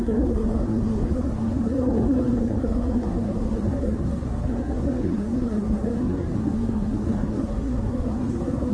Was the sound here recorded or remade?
remade